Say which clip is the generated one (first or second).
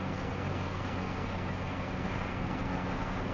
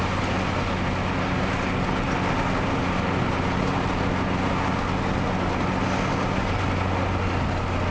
first